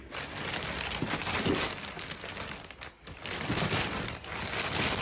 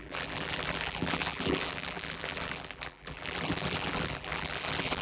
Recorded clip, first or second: first